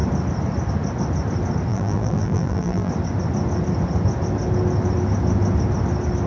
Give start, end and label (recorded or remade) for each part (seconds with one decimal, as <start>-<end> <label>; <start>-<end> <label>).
0.0-1.7 recorded; 1.7-2.9 remade; 2.9-6.3 recorded